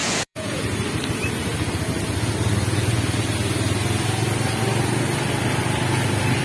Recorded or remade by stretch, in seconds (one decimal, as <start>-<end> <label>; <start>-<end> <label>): 0.0-0.6 remade; 0.6-6.4 recorded